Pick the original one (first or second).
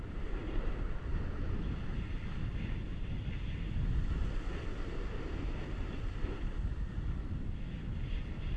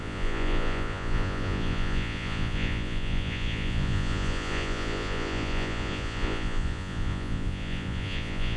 first